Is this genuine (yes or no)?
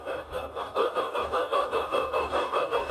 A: no